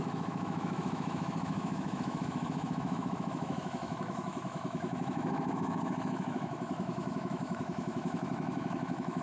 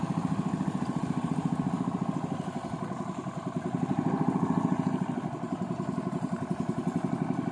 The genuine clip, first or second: second